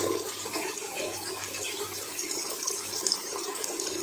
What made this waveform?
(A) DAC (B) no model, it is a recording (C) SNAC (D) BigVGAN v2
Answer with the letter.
A